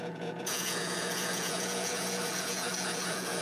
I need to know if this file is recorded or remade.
remade